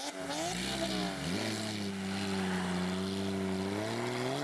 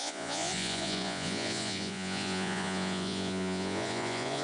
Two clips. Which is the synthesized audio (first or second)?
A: second